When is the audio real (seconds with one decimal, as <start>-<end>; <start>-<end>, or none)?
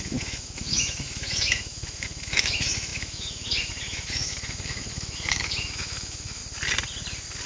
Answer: 6.4-7.5